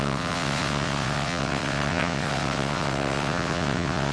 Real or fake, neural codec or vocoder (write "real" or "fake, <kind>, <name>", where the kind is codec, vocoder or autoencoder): fake, vocoder, WaveNeXt